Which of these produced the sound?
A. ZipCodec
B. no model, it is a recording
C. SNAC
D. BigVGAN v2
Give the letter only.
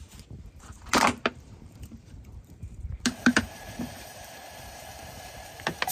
D